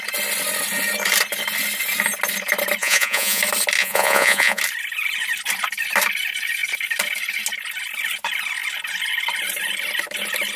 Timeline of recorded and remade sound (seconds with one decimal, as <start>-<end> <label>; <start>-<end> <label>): 0.0-2.8 recorded; 2.8-3.4 remade; 3.4-3.8 recorded; 3.8-4.6 remade; 4.6-10.6 recorded